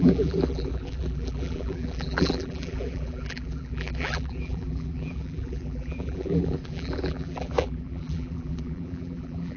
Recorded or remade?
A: remade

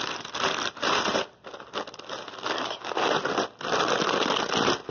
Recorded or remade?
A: recorded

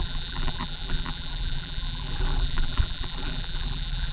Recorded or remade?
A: remade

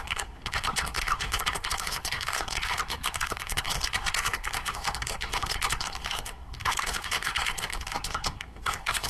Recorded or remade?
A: remade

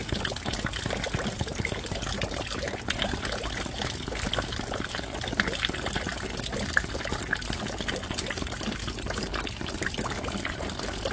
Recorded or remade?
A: recorded